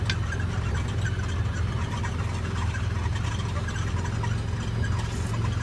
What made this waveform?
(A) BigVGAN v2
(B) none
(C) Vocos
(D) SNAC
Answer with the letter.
B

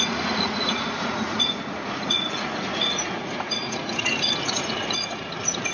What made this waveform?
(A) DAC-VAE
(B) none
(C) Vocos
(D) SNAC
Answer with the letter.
C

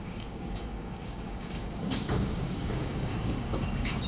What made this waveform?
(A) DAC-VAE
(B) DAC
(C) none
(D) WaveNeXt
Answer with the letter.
B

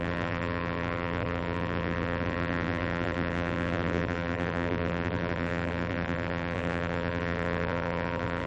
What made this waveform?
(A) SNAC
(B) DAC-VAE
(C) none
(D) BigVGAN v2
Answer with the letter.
D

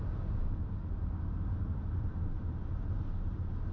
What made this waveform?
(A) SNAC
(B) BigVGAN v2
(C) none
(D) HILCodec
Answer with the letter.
B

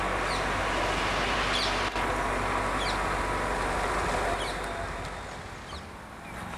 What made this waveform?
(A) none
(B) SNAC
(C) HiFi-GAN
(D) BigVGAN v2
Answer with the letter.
A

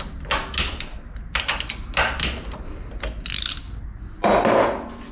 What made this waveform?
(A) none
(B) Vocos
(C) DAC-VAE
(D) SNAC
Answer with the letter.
A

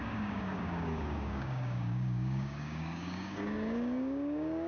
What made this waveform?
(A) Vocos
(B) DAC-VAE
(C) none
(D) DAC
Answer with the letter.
D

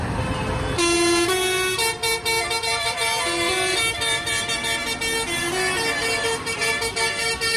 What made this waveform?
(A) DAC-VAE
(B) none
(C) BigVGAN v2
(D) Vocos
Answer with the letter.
B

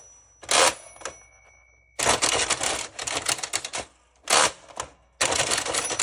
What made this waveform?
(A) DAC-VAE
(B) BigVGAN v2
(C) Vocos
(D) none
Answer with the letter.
D